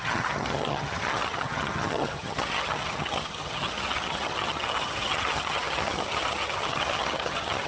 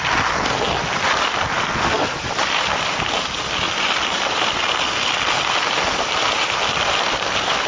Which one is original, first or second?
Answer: second